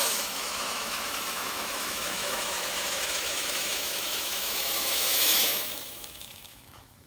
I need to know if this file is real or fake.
fake